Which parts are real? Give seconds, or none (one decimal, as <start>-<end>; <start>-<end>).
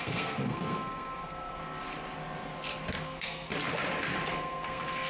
1.6-3.0; 3.5-4.3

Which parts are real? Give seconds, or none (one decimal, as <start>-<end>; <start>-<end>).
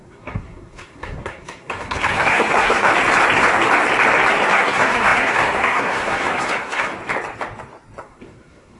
2.9-4.5; 6.9-8.0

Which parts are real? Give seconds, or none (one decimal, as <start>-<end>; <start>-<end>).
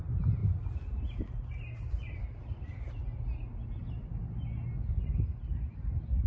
0.0-6.3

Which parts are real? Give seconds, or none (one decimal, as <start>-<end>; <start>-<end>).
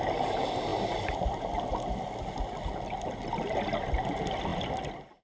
0.0-5.2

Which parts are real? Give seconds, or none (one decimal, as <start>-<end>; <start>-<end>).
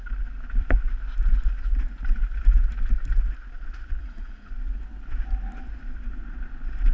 0.0-4.0; 4.5-6.9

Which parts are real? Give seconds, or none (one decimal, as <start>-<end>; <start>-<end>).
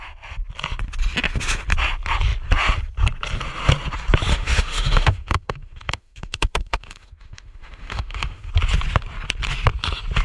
0.0-4.3; 8.5-10.2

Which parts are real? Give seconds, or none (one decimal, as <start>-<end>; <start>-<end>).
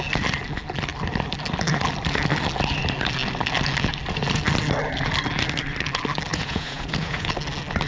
0.0-6.3; 7.3-7.9